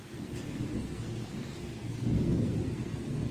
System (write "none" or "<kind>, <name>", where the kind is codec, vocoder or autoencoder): codec, SNAC